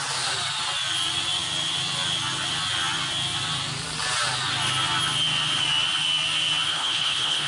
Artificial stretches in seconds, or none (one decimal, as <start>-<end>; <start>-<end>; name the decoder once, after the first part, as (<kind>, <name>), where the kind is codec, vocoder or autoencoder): 6.7-7.5 (codec, HILCodec)